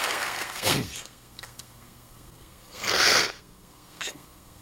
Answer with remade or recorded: remade